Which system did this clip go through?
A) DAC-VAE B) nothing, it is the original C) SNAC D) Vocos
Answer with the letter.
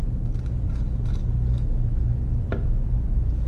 B